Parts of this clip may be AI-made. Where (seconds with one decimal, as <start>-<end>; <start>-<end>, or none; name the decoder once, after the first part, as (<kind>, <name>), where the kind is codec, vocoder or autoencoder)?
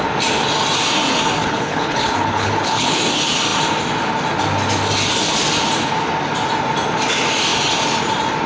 1.4-3.0 (codec, HILCodec)